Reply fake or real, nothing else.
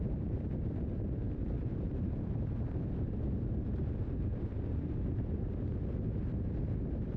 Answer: fake